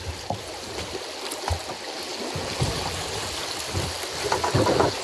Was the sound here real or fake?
real